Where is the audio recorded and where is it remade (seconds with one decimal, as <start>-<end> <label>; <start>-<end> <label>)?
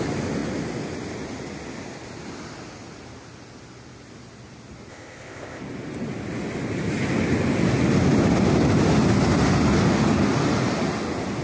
0.0-4.9 recorded; 4.9-5.6 remade; 5.6-11.4 recorded